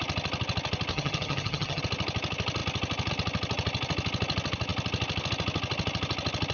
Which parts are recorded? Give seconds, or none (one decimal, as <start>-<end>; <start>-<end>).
0.0-0.9; 1.8-6.5